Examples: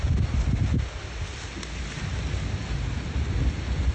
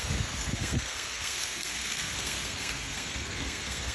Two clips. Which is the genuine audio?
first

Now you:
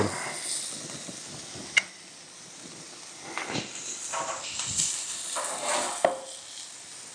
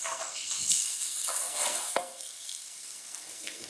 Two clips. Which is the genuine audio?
first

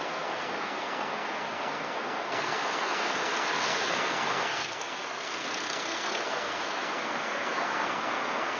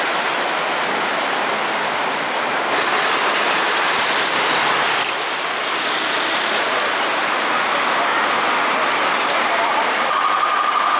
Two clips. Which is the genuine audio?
second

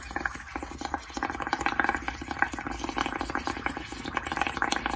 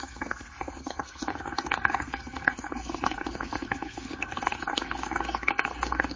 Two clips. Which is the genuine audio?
first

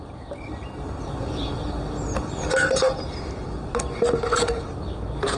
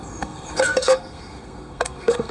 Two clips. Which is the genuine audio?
first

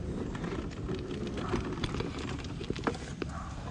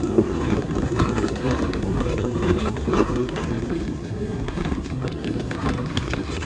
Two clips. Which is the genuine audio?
first